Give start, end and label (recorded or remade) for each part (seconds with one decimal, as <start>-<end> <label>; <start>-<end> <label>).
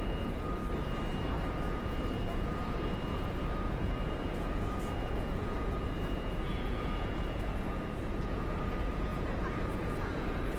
0.0-0.6 remade; 0.6-1.7 recorded; 1.7-10.6 remade